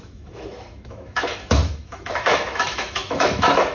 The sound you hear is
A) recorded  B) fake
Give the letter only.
B